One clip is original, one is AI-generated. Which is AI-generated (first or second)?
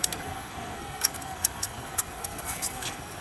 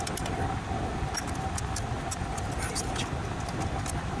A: first